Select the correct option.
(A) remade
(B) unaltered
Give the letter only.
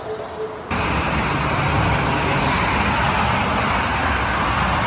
B